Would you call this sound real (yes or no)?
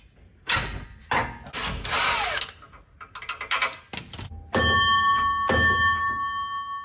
yes